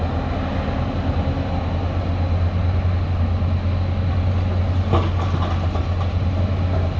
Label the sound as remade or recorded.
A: recorded